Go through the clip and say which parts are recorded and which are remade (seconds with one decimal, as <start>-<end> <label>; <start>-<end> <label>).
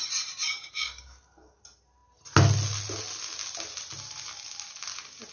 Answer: 0.0-0.4 recorded; 0.4-1.6 remade; 1.6-5.3 recorded